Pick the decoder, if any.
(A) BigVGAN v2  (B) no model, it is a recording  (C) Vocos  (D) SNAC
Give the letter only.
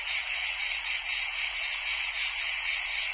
C